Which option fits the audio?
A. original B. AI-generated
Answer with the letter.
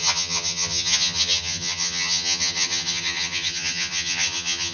B